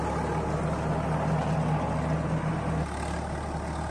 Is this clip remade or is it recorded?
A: recorded